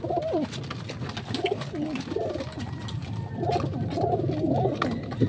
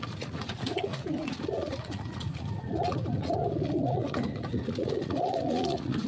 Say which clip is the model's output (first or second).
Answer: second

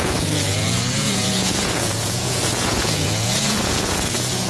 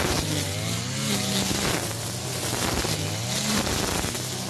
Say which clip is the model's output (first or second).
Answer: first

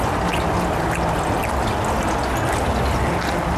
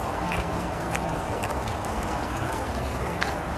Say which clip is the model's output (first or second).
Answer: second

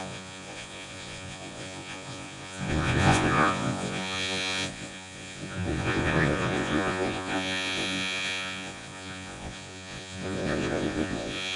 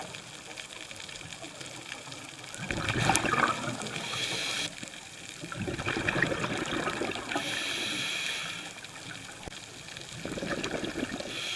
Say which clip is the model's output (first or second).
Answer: first